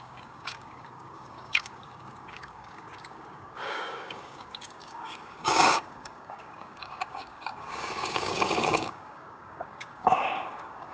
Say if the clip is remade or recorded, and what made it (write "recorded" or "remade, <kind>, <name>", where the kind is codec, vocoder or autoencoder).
remade, codec, DAC